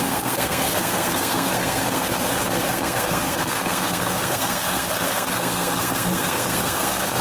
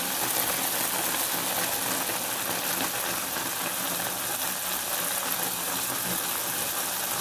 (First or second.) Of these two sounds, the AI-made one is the first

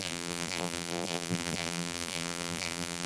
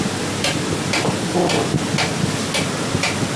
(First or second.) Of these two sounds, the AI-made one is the first